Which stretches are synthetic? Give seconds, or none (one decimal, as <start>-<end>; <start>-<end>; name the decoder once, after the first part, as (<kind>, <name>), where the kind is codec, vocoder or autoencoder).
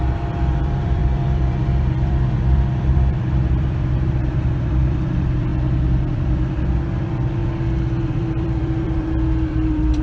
0.0-5.5 (vocoder, BigVGAN v2); 6.1-7.4; 8.0-10.0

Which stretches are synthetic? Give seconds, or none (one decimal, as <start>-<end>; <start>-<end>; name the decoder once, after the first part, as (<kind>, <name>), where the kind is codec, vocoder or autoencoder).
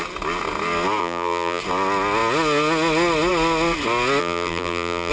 1.0-1.6 (vocoder, BigVGAN v2); 4.2-5.1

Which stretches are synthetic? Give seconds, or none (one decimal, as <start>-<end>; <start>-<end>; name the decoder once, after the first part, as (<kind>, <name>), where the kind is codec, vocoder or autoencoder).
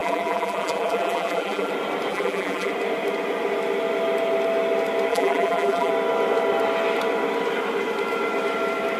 0.0-1.7 (vocoder, BigVGAN v2); 2.1-2.7; 5.1-5.9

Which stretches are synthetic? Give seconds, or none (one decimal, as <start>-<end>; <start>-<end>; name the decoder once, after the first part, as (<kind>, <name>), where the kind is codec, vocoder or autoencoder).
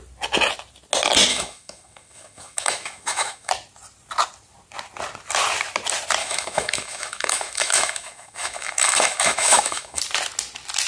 1.3-3.5 (autoencoder, DAC-VAE); 6.2-10.0